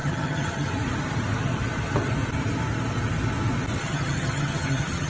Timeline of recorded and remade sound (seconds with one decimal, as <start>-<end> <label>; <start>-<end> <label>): 0.0-0.7 remade; 0.7-3.8 recorded; 3.8-5.1 remade